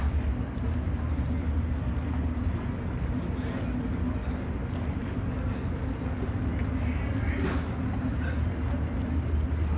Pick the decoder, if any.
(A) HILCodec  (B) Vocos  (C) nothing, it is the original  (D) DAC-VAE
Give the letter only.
C